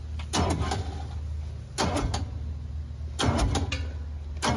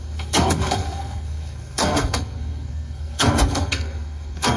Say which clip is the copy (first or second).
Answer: second